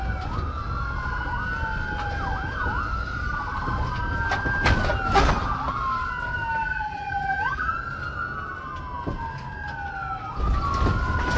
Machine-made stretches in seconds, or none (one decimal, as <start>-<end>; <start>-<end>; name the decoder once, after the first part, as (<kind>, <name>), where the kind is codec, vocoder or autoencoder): 6.6-7.7 (vocoder, BigVGAN v2)